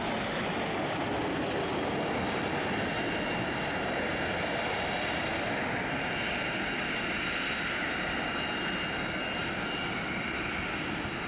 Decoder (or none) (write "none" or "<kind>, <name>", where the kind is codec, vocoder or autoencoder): none